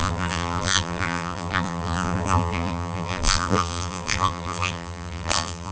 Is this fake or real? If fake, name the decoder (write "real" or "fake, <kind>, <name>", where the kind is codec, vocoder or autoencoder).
fake, vocoder, BigVGAN v2